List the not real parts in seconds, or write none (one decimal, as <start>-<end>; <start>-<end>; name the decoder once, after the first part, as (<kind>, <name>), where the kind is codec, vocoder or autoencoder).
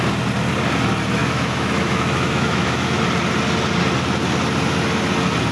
1.2-3.0 (autoencoder, DAC-VAE)